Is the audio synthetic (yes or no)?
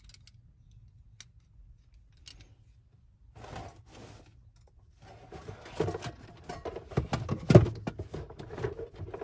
no